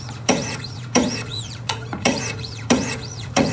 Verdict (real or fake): fake